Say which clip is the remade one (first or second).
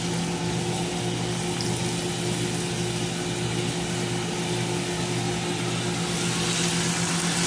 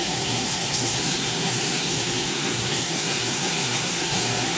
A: second